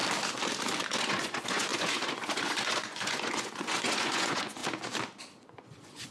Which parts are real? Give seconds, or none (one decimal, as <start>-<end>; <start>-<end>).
0.0-0.9; 4.6-5.4